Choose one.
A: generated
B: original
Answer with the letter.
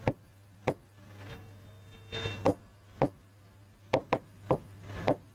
B